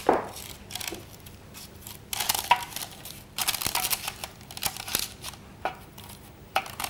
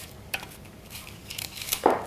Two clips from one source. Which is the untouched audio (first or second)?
first